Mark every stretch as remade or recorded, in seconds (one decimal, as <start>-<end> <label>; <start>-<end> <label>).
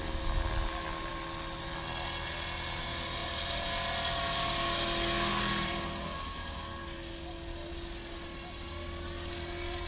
0.0-9.9 recorded